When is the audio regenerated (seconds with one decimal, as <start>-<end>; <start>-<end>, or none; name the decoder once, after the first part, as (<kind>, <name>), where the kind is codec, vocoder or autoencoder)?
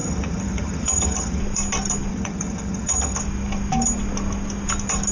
0.0-1.4 (vocoder, HiFi-GAN); 2.1-3.2